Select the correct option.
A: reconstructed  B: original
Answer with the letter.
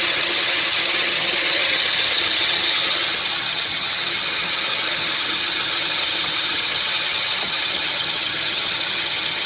A